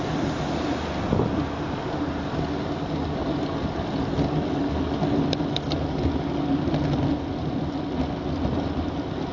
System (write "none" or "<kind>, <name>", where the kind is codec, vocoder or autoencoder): none